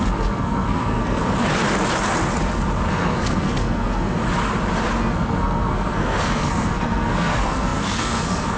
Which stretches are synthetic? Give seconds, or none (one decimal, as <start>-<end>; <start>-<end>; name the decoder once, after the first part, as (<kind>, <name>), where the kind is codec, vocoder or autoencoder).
0.0-1.2 (codec, SNAC); 2.9-4.2; 5.0-8.6